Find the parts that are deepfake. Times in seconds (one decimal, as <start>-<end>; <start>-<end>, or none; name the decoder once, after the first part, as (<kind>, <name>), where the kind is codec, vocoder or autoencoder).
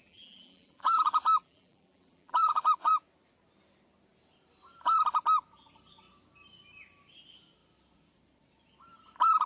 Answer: 0.0-2.9 (vocoder, BigVGAN v2)